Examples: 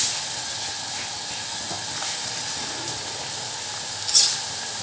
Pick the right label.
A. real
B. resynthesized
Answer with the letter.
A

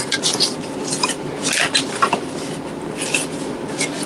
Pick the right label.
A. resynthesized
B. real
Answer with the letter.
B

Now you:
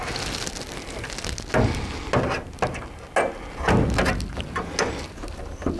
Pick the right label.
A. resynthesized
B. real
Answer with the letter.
B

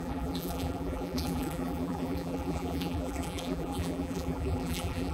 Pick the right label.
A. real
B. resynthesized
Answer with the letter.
B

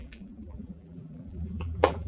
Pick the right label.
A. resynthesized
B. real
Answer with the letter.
A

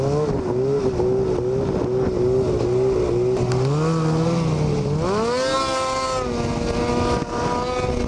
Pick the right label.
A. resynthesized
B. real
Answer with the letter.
B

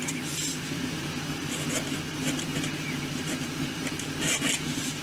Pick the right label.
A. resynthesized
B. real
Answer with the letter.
A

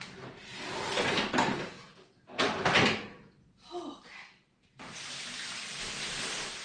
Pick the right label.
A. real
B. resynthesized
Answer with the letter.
A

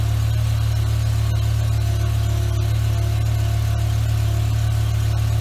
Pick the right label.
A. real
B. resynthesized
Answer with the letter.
A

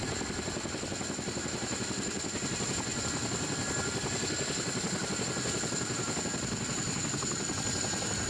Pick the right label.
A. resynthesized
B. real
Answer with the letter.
B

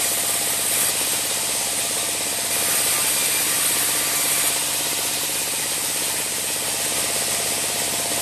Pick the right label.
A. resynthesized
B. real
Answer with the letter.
A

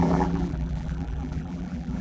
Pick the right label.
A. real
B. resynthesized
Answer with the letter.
B